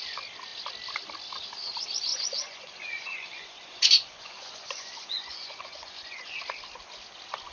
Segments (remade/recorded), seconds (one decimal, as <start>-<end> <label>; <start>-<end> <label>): 0.0-2.1 recorded; 2.1-6.4 remade; 6.4-7.5 recorded